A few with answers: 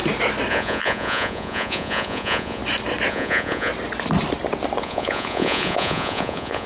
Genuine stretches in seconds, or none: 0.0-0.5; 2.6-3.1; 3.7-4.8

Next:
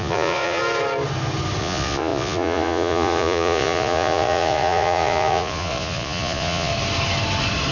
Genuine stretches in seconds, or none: 0.6-1.6; 6.7-7.7

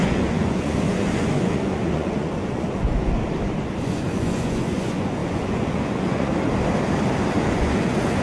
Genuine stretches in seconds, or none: 3.2-3.8; 6.3-7.3

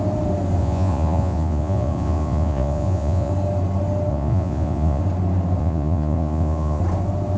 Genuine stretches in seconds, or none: 0.0-0.6; 3.3-4.1; 5.0-5.6; 6.8-7.4

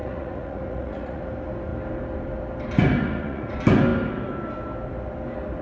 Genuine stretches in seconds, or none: 1.2-3.0; 3.5-5.6

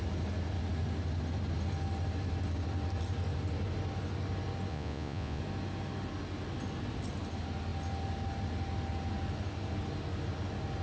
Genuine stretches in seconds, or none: 0.0-4.7; 5.4-10.8

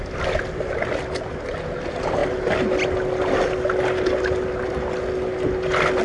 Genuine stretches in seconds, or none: 0.0-6.0

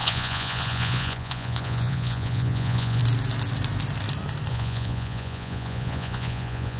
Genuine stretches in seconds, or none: 3.0-4.5